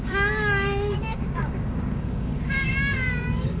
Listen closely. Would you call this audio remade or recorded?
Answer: remade